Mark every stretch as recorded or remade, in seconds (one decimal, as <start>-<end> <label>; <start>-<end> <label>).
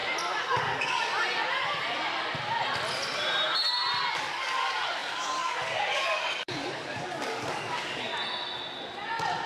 0.0-0.5 recorded; 0.5-1.1 remade; 1.1-4.1 recorded; 4.1-8.1 remade; 8.1-9.5 recorded